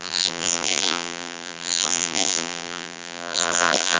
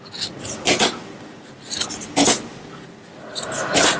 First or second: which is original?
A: second